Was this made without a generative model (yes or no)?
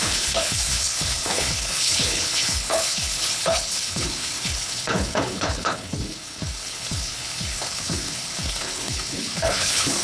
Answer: no